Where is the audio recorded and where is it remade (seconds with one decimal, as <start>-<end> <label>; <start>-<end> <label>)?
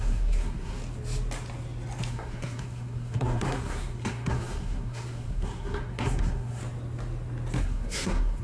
0.0-0.8 remade; 0.8-2.1 recorded; 2.1-6.6 remade; 6.6-7.6 recorded; 7.6-8.4 remade